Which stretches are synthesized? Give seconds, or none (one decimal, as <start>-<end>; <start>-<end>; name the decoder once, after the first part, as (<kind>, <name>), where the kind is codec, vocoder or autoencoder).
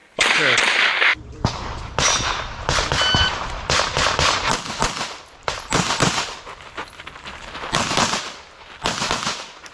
0.0-0.7 (vocoder, BigVGAN v2); 1.1-1.7; 3.2-4.5; 5.4-6.4